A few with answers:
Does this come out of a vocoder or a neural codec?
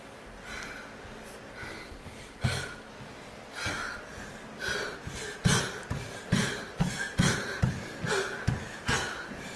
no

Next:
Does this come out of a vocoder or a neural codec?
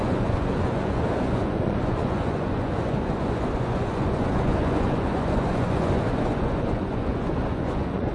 yes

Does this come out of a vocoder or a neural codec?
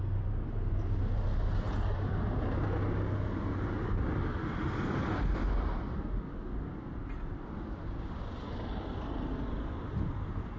no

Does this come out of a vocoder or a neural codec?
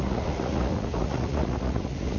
yes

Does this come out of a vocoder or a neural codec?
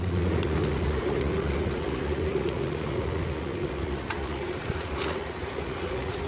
yes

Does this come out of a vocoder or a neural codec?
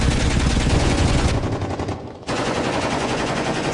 yes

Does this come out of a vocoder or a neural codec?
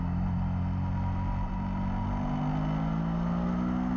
no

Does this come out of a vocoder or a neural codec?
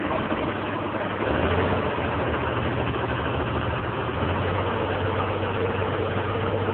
no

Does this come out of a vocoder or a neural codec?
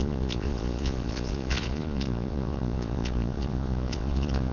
yes